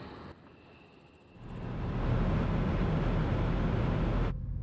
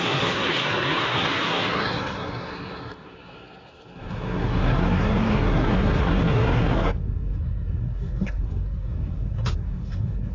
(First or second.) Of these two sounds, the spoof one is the second